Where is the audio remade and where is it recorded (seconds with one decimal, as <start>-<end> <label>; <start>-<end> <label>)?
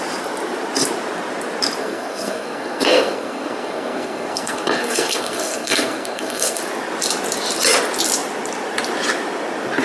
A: 0.0-1.8 recorded; 1.8-6.6 remade; 6.6-9.8 recorded